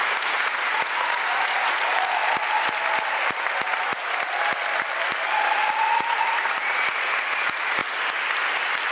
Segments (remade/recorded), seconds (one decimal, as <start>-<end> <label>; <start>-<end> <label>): 0.0-2.2 remade; 2.2-6.1 recorded; 6.1-7.8 remade; 7.8-8.9 recorded